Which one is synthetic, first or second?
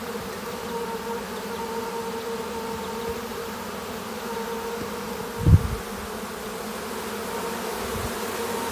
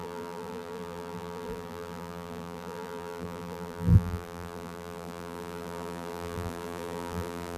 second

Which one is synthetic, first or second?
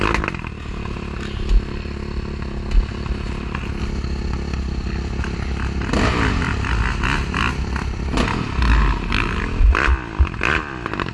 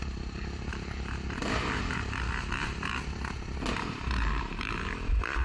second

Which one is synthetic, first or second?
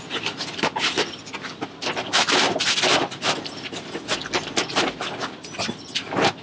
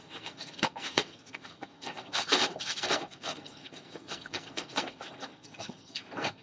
second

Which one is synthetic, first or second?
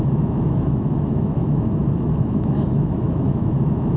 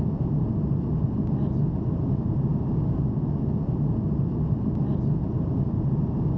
first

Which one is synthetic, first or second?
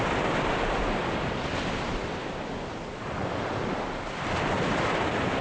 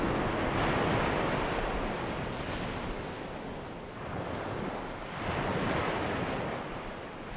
first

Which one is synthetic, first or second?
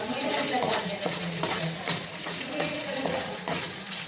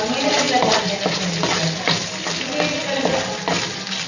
first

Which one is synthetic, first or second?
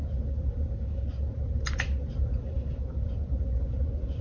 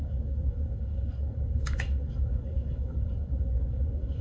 second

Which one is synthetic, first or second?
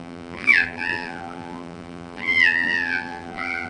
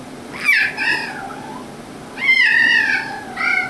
first